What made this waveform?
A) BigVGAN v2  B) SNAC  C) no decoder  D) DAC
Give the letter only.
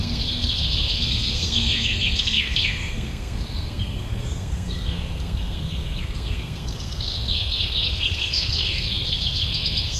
B